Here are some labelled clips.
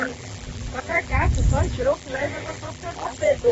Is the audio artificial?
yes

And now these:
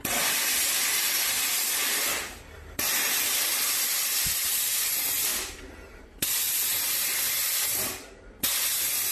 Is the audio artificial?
no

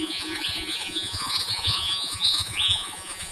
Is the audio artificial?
yes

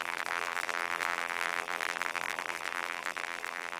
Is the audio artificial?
yes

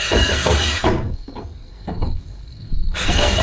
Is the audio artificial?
yes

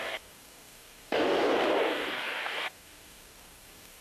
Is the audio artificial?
yes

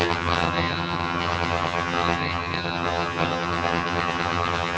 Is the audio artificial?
yes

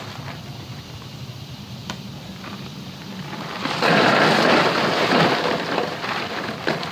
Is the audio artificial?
yes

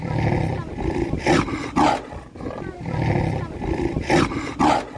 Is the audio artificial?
no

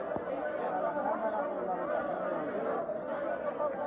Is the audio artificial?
no